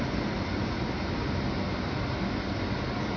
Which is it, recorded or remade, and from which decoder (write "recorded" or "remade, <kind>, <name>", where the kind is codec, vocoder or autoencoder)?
recorded